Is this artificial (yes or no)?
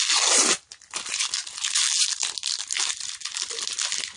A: no